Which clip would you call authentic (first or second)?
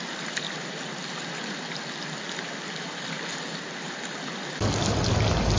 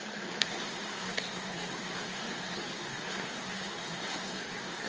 first